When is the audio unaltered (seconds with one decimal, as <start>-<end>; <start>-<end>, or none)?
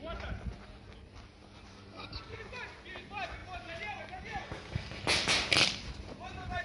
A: 0.0-1.7; 2.4-4.4; 5.0-6.6